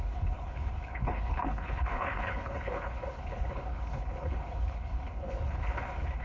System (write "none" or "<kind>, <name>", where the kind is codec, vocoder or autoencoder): codec, HILCodec